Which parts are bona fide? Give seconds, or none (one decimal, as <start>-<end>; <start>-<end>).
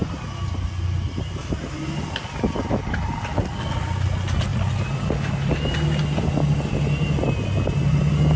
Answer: 0.0-8.4